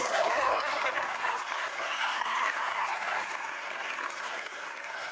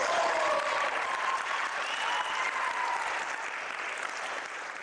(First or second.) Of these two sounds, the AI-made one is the first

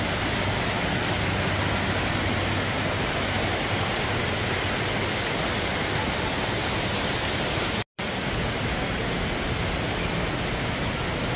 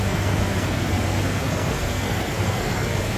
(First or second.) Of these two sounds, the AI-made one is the second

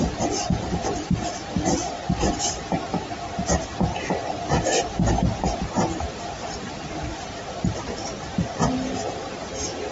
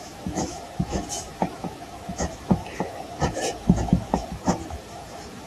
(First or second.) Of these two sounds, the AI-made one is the second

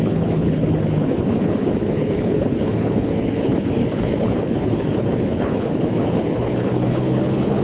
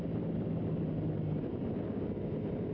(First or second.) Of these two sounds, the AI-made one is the first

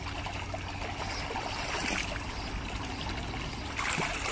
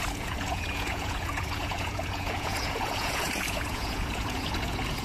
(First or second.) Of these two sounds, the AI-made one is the second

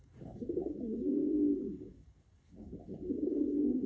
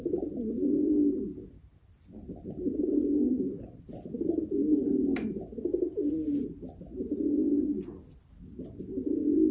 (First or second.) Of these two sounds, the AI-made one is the first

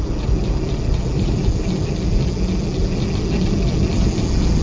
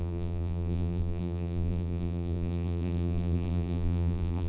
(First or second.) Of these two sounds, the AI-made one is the second